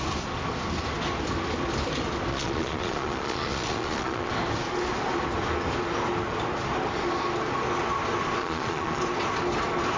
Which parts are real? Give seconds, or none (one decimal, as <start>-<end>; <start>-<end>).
0.0-2.3; 4.3-8.4; 9.0-10.0